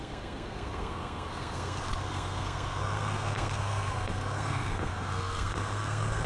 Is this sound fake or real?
fake